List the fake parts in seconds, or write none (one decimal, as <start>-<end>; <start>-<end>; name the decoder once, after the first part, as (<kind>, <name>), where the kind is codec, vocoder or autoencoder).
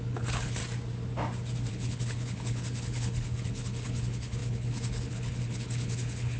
0.0-0.6 (codec, HILCodec); 1.7-6.4